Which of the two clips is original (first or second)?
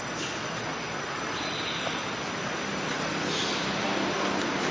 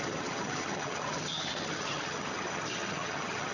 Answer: first